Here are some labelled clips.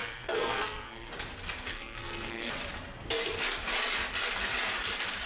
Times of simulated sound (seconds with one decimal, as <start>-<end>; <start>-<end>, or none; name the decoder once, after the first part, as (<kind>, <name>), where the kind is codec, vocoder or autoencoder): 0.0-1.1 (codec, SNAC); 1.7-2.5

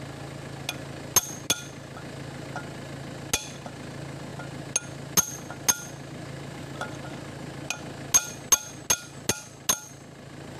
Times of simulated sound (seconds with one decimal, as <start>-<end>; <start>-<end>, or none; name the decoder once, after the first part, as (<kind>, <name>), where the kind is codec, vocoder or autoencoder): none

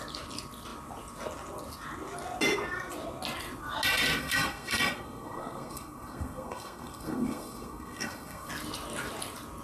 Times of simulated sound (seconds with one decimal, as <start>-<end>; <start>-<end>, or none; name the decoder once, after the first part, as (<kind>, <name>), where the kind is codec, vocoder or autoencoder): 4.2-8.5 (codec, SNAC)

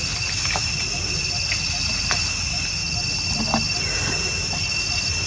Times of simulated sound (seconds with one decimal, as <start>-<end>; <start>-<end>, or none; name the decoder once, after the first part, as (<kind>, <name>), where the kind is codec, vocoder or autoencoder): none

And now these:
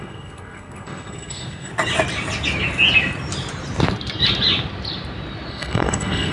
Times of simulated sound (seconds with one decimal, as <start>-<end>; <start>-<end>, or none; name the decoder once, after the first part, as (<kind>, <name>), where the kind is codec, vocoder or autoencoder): 0.0-1.7 (codec, SNAC); 5.5-6.3

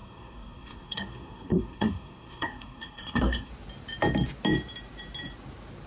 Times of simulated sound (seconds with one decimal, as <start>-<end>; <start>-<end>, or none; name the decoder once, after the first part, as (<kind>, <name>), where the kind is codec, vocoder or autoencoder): 0.0-3.5 (codec, SNAC)

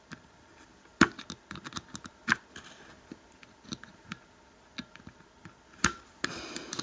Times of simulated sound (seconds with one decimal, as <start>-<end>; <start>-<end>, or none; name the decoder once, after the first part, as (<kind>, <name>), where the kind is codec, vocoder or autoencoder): none